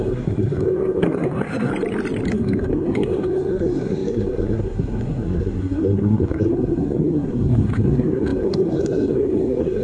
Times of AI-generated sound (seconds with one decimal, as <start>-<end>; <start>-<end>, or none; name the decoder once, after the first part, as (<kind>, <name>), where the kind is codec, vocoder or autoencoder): 0.0-1.7 (codec, SNAC); 2.3-9.8